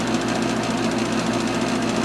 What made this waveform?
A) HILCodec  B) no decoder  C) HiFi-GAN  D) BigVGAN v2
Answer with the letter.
B